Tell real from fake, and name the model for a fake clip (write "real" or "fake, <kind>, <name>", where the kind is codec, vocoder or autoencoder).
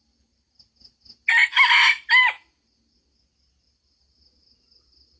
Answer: real